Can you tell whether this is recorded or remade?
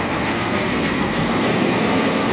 remade